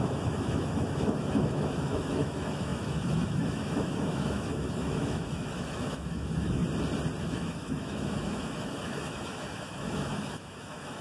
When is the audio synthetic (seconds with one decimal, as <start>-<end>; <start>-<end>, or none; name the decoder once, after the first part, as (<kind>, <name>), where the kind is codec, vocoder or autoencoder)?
0.0-6.6 (autoencoder, DAC-VAE); 7.2-11.0